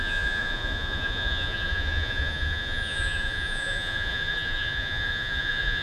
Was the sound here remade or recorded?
remade